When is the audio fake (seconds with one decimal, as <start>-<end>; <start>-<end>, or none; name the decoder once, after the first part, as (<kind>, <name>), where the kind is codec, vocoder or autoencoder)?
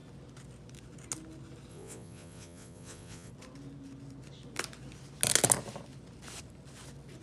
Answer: 1.7-3.3 (vocoder, Vocos)